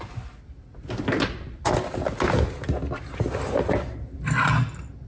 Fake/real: real